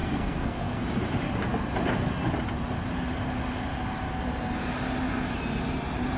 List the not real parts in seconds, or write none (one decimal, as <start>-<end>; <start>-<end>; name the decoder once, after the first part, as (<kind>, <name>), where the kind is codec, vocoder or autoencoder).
0.0-0.8 (codec, SNAC)